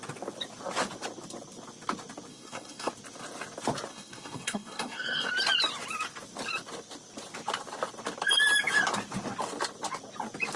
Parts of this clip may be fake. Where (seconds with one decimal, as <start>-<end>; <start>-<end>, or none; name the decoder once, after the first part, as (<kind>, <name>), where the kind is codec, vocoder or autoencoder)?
2.3-2.9 (codec, SNAC); 3.9-5.3